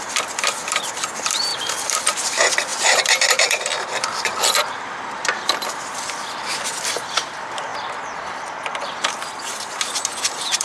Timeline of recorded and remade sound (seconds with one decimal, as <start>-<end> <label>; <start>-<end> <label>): 0.0-7.7 remade; 7.7-9.1 recorded; 9.1-10.6 remade